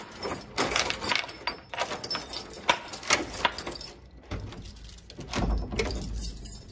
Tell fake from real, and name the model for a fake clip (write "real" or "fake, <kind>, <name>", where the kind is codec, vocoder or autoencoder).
real